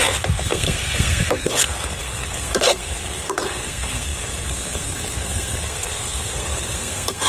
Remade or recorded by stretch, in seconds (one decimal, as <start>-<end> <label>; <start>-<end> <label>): 0.0-7.3 remade